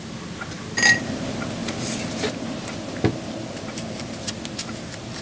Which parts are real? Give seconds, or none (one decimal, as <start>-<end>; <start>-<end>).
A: 0.0-5.2